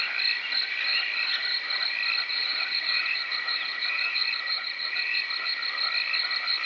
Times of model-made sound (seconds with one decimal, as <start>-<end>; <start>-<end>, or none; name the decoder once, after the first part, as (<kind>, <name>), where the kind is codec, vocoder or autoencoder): 2.3-5.2 (vocoder, Vocos)